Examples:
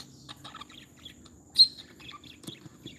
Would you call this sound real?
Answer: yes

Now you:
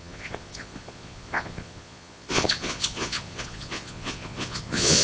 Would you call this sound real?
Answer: no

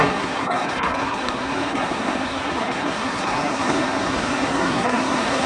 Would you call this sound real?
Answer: no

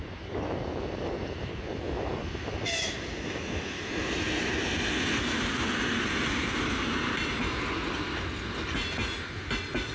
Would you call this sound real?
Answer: yes